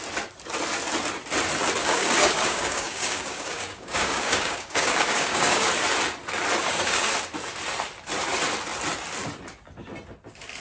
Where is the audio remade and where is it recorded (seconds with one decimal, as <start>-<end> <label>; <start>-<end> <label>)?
0.0-1.8 recorded; 1.8-5.7 remade; 5.7-6.6 recorded; 6.6-7.1 remade; 7.1-10.6 recorded